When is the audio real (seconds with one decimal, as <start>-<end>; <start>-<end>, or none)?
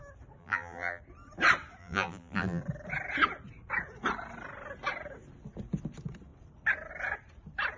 0.0-0.4; 1.0-1.8; 2.6-7.8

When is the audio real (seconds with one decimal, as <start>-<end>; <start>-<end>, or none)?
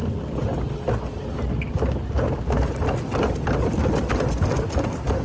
0.0-5.2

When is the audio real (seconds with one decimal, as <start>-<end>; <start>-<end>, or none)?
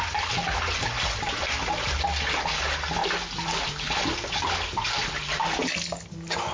0.0-6.5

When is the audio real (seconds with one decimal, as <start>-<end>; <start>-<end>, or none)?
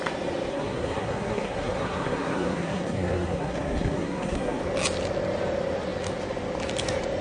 0.0-0.5; 4.6-7.2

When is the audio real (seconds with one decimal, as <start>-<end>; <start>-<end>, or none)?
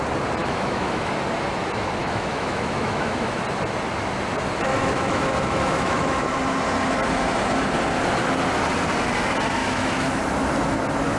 0.0-0.4; 1.1-2.0; 3.4-4.7; 6.3-9.6; 10.2-11.2